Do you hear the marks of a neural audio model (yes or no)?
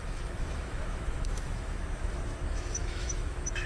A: yes